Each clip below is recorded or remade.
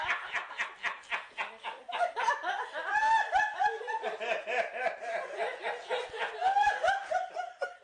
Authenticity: recorded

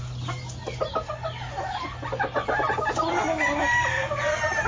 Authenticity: recorded